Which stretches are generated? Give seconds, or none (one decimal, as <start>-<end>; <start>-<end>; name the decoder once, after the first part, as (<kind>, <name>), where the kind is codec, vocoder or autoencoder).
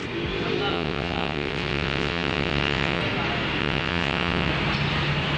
0.7-3.0 (vocoder, WaveNeXt); 3.6-4.5